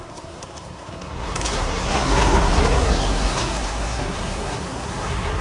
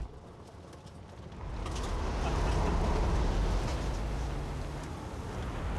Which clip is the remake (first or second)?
first